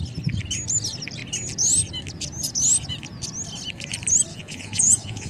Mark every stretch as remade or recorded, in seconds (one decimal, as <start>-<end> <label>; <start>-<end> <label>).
0.0-4.3 recorded; 4.3-5.3 remade